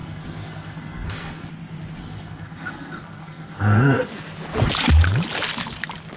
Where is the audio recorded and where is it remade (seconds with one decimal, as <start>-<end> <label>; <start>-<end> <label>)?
0.0-1.5 remade; 1.5-2.0 recorded; 2.0-4.2 remade; 4.2-6.2 recorded